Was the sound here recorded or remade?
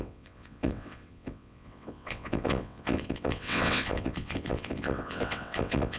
remade